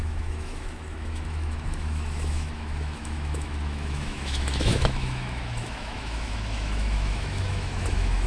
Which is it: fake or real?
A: fake